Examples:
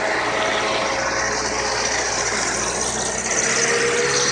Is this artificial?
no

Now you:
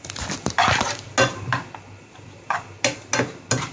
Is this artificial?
no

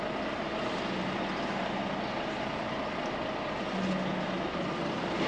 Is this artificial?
no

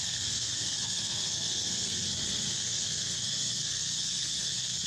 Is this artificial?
yes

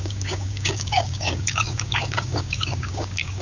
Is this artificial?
yes